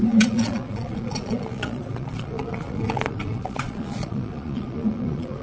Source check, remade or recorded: remade